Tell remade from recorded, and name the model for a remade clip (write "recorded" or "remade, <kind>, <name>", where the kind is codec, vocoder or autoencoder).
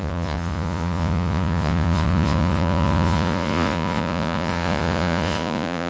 remade, vocoder, Vocos